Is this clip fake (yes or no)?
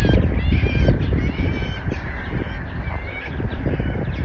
no